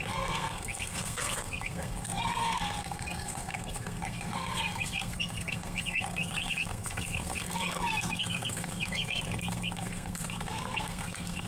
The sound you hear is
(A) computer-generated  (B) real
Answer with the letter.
A